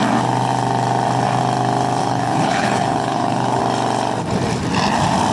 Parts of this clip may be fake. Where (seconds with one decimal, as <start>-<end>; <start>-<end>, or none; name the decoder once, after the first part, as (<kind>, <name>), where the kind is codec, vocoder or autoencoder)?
2.0-3.6 (codec, HILCodec)